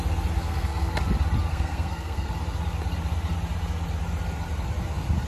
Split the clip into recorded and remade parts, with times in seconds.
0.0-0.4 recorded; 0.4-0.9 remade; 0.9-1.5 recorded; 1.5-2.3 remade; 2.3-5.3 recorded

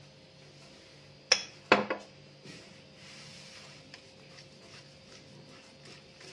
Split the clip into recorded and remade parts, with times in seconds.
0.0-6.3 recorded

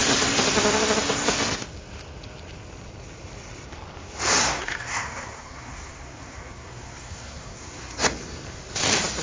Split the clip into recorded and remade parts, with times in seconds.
0.0-4.4 recorded; 4.4-8.0 remade; 8.0-9.2 recorded